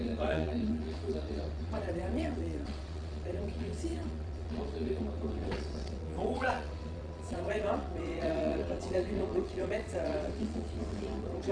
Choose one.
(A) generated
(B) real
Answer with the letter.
A